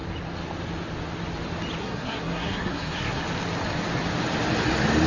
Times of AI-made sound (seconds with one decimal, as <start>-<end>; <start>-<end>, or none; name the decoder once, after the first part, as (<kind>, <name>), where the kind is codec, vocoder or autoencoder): 1.8-3.2 (codec, SNAC)